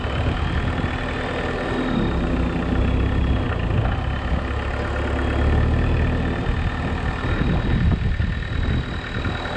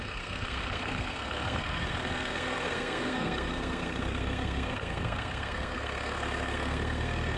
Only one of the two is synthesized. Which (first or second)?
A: second